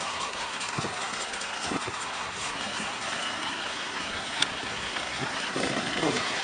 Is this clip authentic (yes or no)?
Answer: no